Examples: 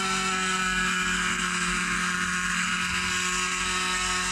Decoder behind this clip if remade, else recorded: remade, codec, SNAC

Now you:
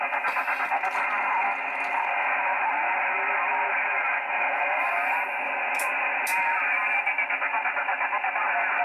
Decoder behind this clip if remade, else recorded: recorded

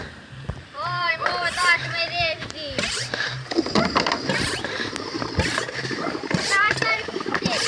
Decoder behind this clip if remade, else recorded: remade, vocoder, BigVGAN v2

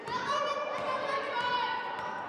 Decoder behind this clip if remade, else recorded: recorded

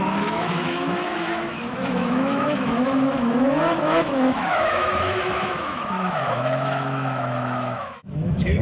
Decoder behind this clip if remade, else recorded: remade, autoencoder, DAC-VAE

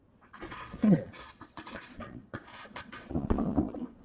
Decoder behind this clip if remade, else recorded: remade, vocoder, Vocos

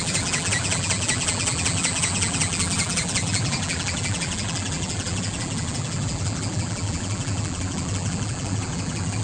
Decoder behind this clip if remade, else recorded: remade, vocoder, BigVGAN v2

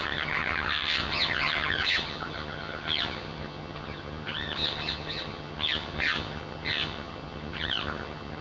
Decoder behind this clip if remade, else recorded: remade, vocoder, HiFi-GAN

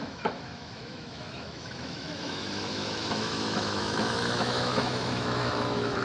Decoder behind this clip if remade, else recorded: remade, autoencoder, DAC-VAE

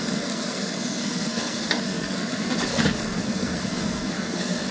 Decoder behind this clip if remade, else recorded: remade, codec, SNAC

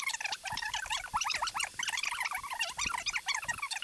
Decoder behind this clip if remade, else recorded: recorded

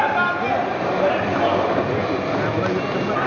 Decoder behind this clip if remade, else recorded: recorded